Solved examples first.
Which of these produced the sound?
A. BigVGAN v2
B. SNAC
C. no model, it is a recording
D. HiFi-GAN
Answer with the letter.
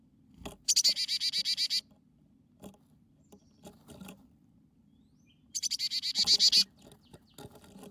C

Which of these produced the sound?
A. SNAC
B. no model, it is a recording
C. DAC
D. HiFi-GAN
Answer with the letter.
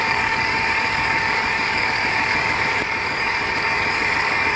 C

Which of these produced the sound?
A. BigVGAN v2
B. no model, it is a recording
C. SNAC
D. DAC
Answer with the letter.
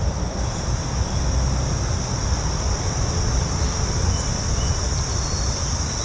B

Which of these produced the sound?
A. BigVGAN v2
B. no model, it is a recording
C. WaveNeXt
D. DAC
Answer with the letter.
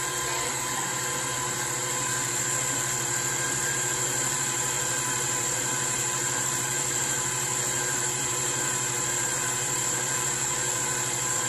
A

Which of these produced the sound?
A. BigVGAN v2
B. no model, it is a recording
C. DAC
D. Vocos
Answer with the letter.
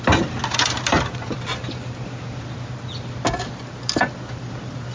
B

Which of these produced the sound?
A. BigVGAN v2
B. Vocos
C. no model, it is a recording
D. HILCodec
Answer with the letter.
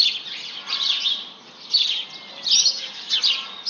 C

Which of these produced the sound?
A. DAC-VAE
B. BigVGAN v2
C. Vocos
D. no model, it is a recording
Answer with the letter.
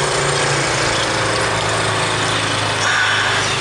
D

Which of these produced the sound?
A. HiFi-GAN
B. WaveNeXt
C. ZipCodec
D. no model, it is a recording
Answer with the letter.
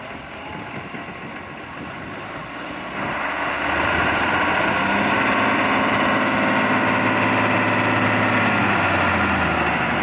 D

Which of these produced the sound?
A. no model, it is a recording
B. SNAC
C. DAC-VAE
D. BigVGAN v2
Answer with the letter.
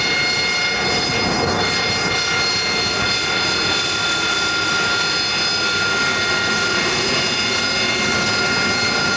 A